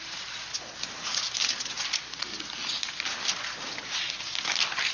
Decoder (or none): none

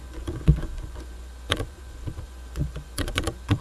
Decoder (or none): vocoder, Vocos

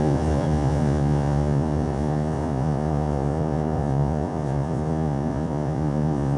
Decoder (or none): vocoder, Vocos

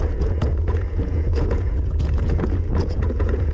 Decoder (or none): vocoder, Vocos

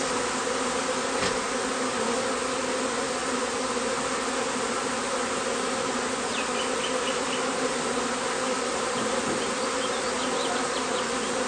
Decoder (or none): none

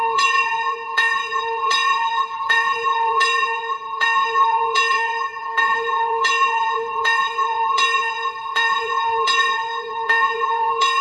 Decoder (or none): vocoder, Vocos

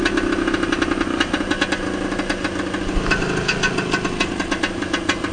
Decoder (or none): none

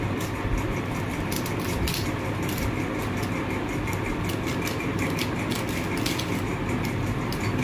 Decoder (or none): none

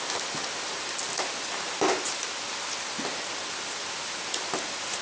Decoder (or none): none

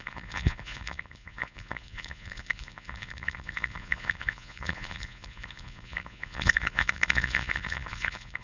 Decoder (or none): vocoder, Vocos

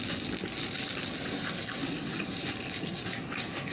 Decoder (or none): none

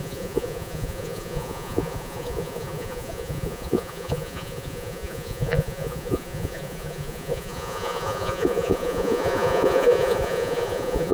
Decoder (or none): vocoder, Vocos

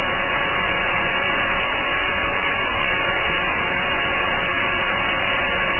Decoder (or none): vocoder, Vocos